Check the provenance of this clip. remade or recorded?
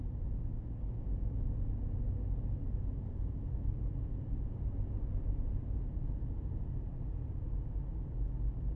recorded